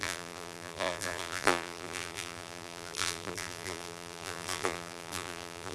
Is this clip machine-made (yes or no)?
yes